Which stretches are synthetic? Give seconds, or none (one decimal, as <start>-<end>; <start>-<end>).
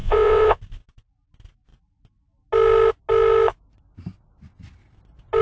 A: 0.0-0.6